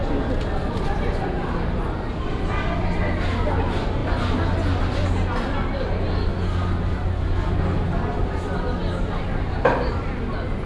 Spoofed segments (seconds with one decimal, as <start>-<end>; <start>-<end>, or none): none